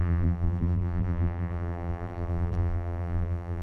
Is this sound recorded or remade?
remade